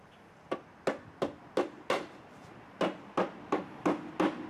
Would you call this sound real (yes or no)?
yes